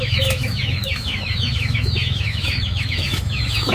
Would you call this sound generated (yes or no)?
yes